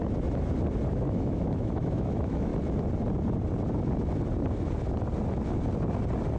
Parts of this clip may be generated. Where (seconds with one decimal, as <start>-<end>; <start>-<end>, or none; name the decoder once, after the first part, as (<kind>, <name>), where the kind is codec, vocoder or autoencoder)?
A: 0.9-2.5 (autoencoder, DAC-VAE)